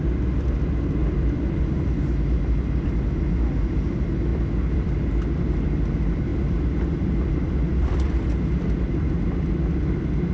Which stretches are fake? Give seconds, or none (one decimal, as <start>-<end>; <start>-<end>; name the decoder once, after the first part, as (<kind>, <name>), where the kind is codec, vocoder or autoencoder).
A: 1.0-1.8 (vocoder, BigVGAN v2)